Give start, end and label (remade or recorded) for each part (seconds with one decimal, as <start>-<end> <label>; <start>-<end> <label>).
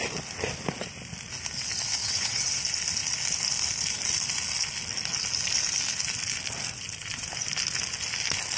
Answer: 0.0-2.0 recorded; 2.0-2.6 remade; 2.6-8.6 recorded